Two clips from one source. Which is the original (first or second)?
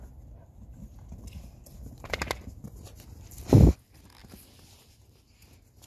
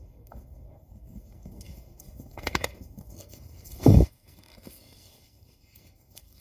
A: first